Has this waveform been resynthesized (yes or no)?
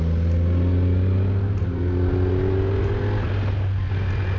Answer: no